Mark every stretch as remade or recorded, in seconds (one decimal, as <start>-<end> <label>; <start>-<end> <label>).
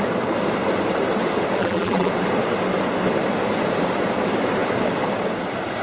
0.0-1.6 recorded; 1.6-2.1 remade; 2.1-5.8 recorded